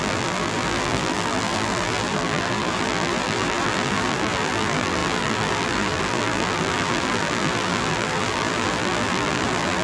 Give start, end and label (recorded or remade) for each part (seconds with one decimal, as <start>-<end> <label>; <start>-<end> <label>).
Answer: 0.0-9.8 remade